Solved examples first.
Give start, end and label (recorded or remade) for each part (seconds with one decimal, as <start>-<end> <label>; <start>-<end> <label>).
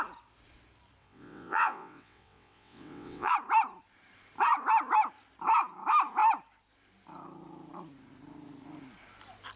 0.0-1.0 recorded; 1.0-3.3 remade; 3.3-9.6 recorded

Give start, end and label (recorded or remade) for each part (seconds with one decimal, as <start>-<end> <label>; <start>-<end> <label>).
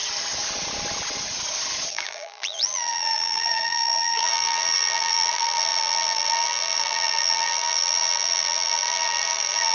0.0-1.9 recorded; 1.9-9.7 remade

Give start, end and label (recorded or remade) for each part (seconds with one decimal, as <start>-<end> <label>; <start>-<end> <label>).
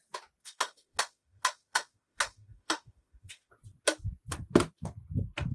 0.0-0.4 recorded; 0.4-3.5 remade; 3.5-5.5 recorded